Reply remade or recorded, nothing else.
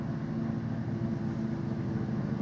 recorded